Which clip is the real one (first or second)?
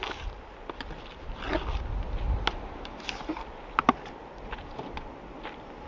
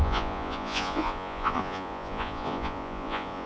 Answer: first